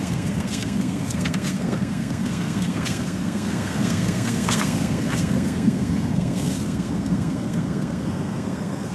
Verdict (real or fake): fake